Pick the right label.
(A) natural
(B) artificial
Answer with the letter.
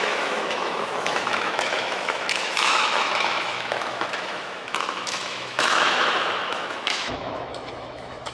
B